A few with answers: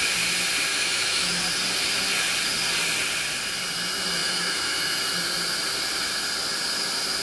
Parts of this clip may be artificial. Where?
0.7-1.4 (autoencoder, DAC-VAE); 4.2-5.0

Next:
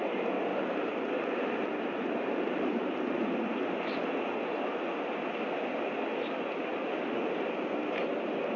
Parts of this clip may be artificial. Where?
0.5-3.2 (vocoder, BigVGAN v2); 6.7-7.3

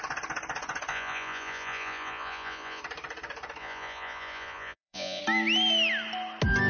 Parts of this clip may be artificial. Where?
0.9-2.8 (vocoder, Vocos); 3.6-5.2

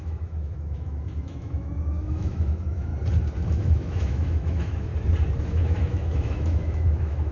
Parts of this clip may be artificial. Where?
0.0-2.9 (autoencoder, DAC-VAE); 3.5-4.9; 5.4-7.3

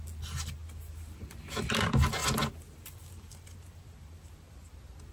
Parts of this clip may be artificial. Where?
none